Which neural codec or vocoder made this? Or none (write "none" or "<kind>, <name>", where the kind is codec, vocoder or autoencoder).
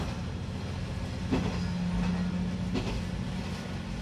none